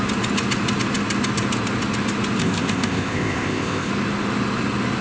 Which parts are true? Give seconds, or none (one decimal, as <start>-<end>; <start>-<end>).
0.0-2.4; 3.9-5.0